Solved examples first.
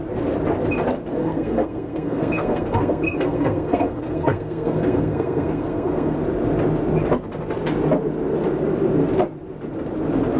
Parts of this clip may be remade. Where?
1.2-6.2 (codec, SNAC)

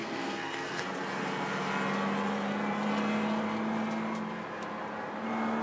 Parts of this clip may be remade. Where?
0.0-0.8 (codec, SNAC)

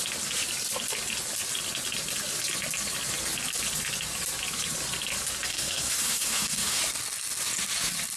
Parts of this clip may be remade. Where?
5.5-6.8 (codec, SNAC)

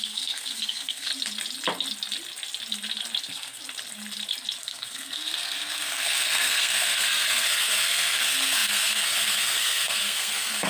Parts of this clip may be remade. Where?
0.0-1.1 (codec, SNAC); 3.2-3.6; 4.6-10.7

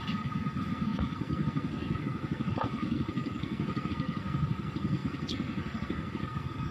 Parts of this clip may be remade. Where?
0.0-6.7 (codec, SNAC)

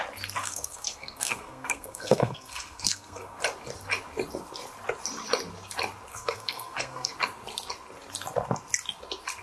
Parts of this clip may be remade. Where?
0.4-3.4 (codec, SNAC); 6.1-7.1